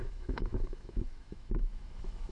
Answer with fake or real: fake